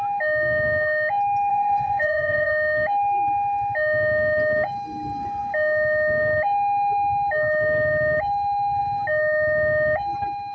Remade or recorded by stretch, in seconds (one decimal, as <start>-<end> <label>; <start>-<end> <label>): 0.0-1.5 recorded; 1.5-2.5 remade; 2.5-10.5 recorded